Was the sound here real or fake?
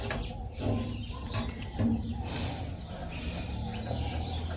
real